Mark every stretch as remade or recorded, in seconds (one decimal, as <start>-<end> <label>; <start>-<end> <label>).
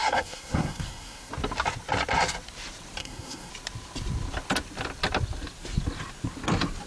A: 0.0-1.3 remade; 1.3-3.0 recorded; 3.0-3.5 remade; 3.5-6.9 recorded